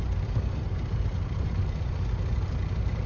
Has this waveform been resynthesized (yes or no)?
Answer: no